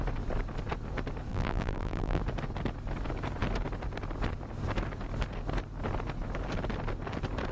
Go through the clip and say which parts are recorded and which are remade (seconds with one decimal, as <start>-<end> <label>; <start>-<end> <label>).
0.0-1.3 recorded; 1.3-2.2 remade; 2.2-7.5 recorded